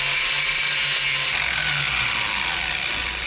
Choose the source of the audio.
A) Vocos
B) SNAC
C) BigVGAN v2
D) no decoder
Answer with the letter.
D